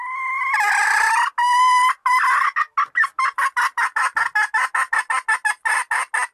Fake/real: real